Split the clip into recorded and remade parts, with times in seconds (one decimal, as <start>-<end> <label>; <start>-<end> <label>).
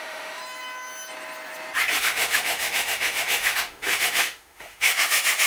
0.0-0.4 remade; 0.4-2.0 recorded; 2.0-5.5 remade